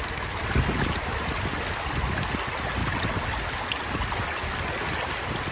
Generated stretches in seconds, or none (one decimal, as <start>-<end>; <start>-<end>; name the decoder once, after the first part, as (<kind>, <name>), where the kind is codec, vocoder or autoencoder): none